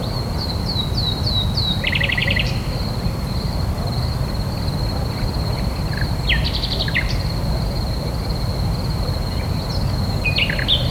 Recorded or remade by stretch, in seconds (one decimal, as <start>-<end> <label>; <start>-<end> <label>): 0.0-2.2 recorded; 2.2-3.8 remade; 3.8-10.9 recorded